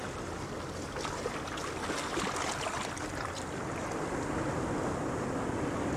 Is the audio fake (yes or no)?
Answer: no